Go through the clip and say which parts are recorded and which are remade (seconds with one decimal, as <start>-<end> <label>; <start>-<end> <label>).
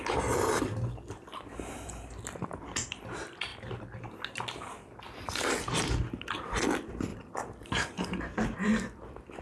0.0-3.5 remade; 3.5-5.0 recorded; 5.0-9.4 remade